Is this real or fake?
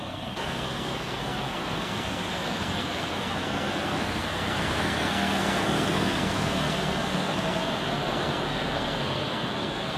fake